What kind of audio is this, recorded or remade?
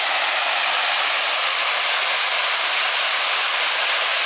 remade